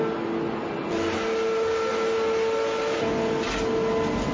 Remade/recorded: recorded